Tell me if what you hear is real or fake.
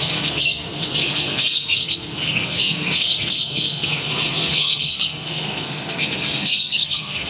fake